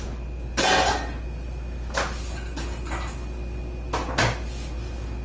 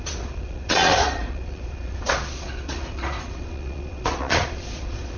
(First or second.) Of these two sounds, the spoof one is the second